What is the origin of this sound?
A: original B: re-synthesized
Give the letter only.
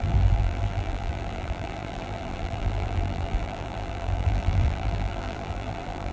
B